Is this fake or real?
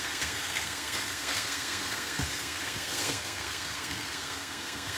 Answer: fake